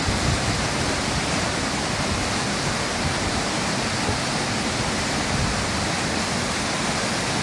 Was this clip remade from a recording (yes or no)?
no